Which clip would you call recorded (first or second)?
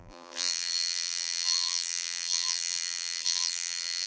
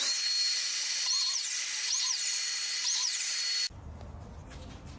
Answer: second